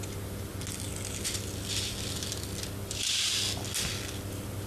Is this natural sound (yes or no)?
yes